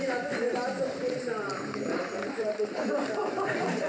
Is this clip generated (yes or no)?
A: yes